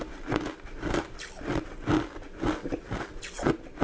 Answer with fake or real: real